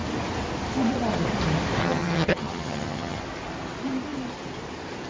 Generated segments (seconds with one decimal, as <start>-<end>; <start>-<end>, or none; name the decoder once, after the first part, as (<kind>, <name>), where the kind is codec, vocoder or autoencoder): 1.8-3.2 (vocoder, HiFi-GAN)